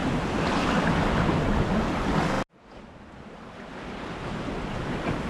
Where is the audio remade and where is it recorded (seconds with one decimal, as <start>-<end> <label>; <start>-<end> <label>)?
0.0-5.3 recorded